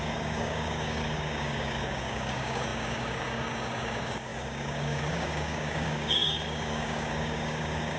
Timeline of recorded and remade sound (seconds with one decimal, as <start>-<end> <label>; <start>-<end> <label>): 0.0-8.0 remade